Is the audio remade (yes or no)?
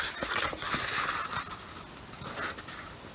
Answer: no